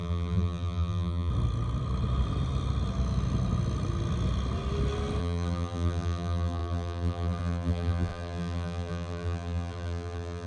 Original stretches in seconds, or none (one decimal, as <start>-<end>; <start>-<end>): 1.3-5.2